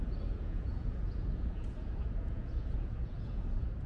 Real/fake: fake